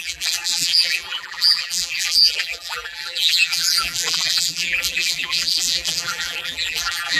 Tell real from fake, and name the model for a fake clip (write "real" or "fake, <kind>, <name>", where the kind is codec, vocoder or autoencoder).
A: fake, vocoder, BigVGAN v2